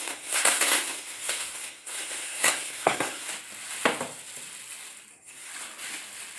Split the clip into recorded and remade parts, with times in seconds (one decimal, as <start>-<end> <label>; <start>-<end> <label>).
0.0-3.3 remade; 3.3-5.1 recorded; 5.1-5.5 remade; 5.5-6.4 recorded